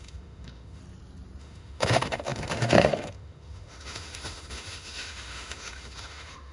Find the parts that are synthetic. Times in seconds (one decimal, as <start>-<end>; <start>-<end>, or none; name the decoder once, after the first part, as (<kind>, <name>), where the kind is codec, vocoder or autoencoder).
0.0-0.8 (autoencoder, DAC-VAE); 1.4-6.5